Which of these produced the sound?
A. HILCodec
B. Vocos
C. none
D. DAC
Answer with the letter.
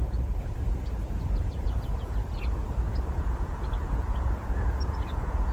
B